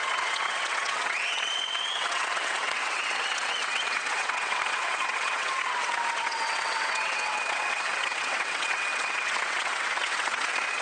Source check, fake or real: fake